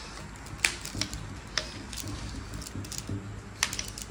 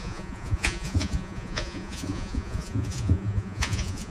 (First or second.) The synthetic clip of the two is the second